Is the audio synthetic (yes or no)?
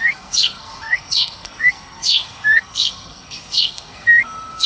yes